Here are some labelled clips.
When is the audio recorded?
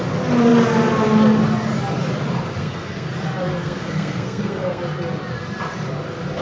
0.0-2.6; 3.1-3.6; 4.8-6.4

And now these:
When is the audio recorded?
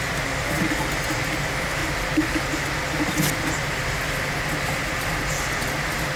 0.0-6.2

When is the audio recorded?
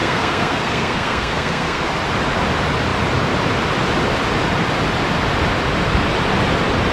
1.8-6.9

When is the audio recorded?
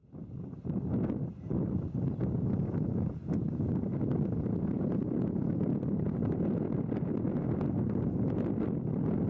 1.6-9.3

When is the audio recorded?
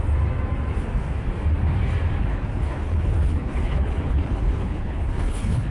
0.0-2.3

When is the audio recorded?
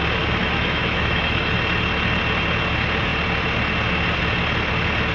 0.0-0.4; 1.5-5.1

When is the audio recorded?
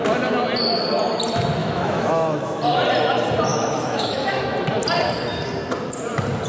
0.0-1.6; 2.6-3.5; 4.4-6.5